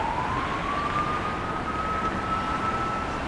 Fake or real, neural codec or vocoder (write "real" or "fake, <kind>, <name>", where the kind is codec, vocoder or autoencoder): real